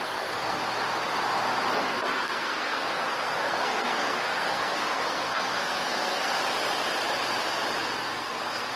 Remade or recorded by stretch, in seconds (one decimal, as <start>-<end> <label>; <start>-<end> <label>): 0.0-0.6 remade; 0.6-1.8 recorded; 1.8-6.4 remade; 6.4-8.0 recorded; 8.0-8.8 remade